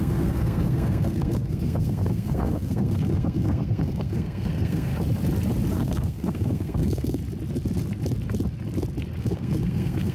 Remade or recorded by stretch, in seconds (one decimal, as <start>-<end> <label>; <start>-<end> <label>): 0.0-4.9 remade; 4.9-5.7 recorded; 5.7-7.2 remade; 7.2-9.2 recorded; 9.2-10.1 remade